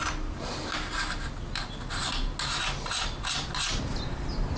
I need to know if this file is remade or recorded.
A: recorded